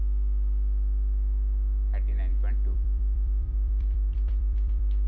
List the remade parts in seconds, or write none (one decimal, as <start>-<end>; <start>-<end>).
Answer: 2.3-5.1